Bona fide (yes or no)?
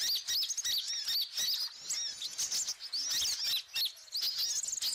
yes